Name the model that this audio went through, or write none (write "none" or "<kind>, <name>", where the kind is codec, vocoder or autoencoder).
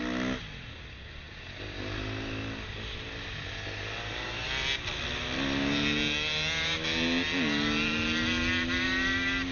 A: none